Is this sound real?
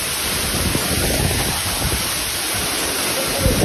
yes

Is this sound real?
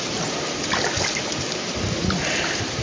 yes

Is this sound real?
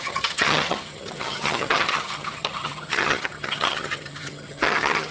no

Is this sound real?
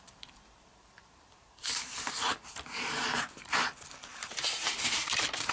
no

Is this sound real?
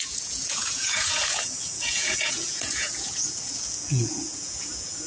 no